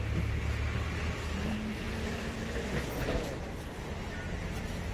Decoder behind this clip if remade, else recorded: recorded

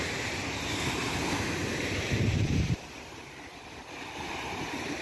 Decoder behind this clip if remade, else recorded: remade, vocoder, BigVGAN v2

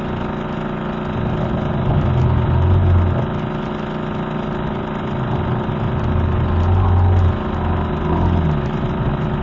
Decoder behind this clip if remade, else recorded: recorded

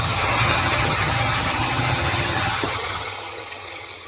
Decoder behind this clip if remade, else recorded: remade, vocoder, HiFi-GAN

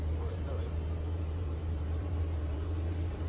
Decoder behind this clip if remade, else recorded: remade, vocoder, BigVGAN v2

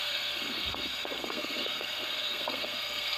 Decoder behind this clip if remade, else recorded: remade, codec, SNAC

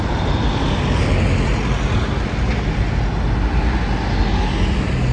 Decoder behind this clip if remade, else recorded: recorded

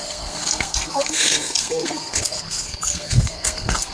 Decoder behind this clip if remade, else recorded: remade, codec, SNAC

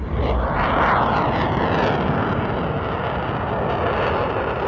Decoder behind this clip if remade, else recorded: recorded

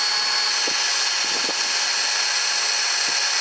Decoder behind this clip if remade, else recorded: recorded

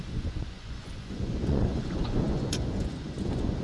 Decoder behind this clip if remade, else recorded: remade, vocoder, Vocos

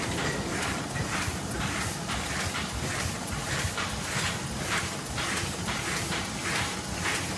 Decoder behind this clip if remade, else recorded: recorded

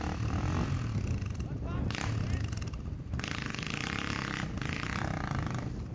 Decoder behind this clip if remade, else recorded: recorded